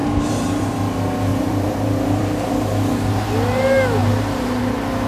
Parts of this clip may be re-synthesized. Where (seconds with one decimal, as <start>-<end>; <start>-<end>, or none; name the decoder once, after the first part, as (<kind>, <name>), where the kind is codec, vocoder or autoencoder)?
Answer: 0.0-0.7 (vocoder, BigVGAN v2); 1.3-2.5; 4.0-4.6